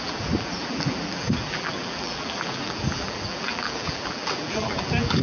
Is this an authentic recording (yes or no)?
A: no